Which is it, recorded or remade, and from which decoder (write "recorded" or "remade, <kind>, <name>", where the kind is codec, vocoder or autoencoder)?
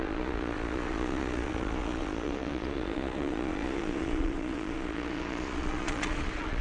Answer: remade, vocoder, Vocos